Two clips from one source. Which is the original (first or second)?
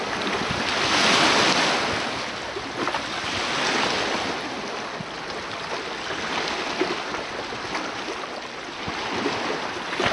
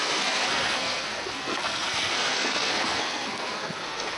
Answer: first